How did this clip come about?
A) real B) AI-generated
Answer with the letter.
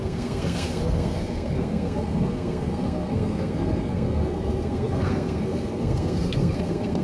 B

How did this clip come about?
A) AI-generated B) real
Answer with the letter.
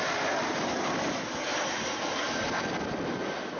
B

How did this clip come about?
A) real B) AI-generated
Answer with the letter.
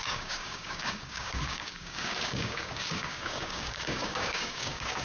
B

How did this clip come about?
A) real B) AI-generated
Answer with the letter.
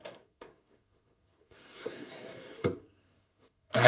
B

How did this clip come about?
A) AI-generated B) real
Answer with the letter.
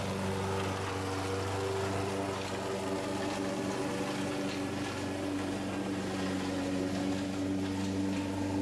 B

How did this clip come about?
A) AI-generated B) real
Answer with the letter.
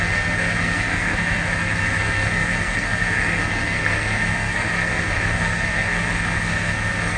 A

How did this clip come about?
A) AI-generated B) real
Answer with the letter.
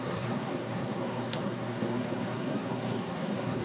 A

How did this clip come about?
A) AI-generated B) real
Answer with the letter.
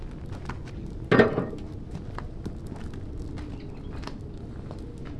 B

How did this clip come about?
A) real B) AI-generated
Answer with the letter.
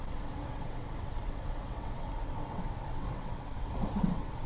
B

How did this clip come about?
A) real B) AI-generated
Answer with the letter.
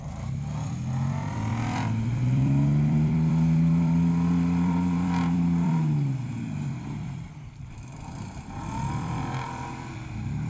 B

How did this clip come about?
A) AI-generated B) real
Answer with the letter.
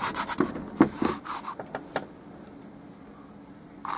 B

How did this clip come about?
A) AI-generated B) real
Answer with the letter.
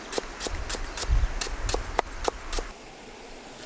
B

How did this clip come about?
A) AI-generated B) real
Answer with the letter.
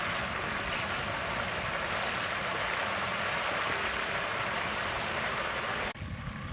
B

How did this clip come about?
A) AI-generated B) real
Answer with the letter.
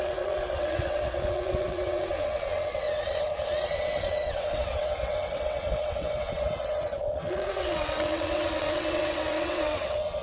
A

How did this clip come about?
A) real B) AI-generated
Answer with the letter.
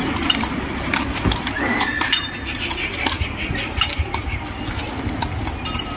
A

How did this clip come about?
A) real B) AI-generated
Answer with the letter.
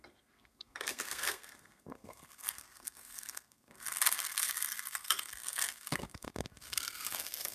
B